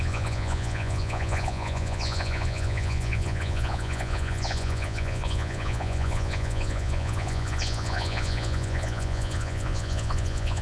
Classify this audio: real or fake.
fake